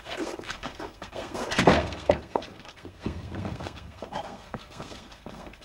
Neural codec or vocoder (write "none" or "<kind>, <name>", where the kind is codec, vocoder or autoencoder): codec, SNAC